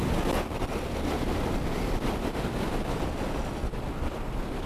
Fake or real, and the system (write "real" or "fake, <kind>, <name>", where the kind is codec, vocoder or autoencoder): real